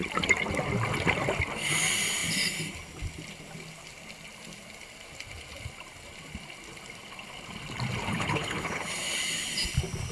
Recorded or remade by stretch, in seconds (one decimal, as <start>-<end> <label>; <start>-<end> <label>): 0.0-8.1 recorded; 8.1-8.9 remade; 8.9-10.1 recorded